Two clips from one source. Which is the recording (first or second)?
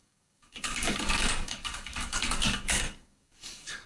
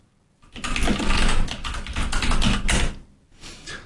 second